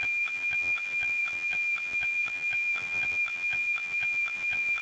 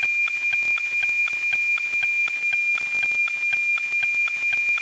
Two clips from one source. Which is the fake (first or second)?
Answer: first